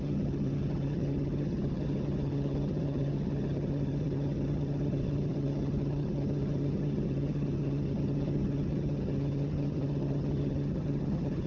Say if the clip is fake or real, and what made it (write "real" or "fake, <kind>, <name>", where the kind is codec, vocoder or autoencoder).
fake, vocoder, HiFi-GAN